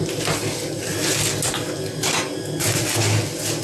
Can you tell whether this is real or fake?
real